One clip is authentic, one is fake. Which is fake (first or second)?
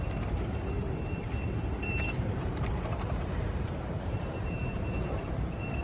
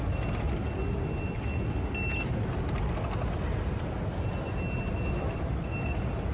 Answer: first